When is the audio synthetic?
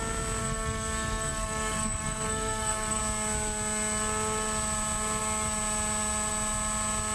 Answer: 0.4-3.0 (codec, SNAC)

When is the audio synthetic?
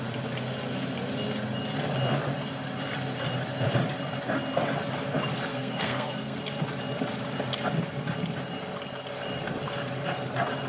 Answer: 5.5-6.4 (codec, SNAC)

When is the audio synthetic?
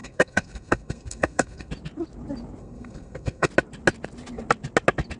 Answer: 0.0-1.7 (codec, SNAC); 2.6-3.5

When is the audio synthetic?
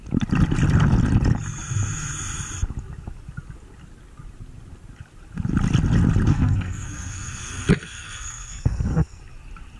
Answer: 6.3-9.2 (codec, SNAC)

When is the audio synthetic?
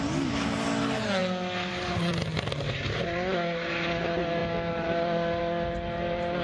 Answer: none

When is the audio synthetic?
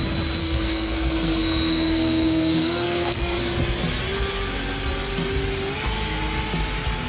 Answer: 0.4-3.4 (codec, SNAC)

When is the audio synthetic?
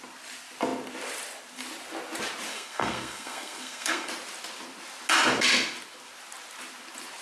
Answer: 2.5-4.1 (codec, SNAC)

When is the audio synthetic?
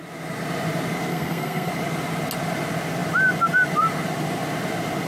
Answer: 1.1-1.7 (codec, SNAC)